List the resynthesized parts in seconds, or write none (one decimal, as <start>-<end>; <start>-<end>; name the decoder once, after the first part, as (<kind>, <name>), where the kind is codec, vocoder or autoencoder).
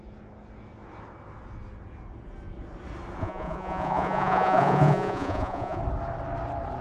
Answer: 3.2-5.8 (vocoder, Vocos)